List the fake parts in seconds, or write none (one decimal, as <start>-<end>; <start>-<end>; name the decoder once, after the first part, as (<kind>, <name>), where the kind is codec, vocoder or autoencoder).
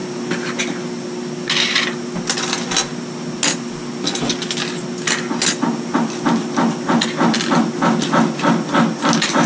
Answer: none